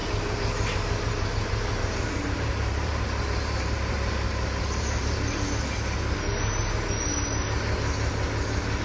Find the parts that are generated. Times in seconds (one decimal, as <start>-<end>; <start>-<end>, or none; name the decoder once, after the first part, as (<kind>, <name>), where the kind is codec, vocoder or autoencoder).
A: 0.0-5.3 (vocoder, BigVGAN v2)